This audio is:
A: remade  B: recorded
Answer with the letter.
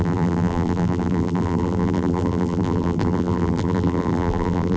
A